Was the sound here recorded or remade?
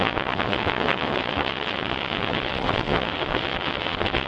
remade